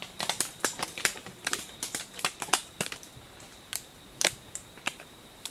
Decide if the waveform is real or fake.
fake